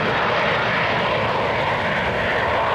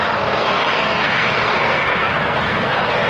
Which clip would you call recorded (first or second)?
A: first